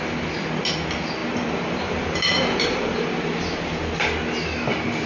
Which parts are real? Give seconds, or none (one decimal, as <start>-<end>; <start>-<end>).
0.0-1.2; 3.8-5.1